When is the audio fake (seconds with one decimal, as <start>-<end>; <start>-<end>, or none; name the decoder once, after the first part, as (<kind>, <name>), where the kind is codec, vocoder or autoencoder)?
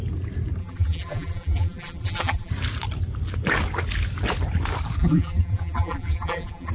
0.6-2.5 (vocoder, BigVGAN v2); 5.0-6.7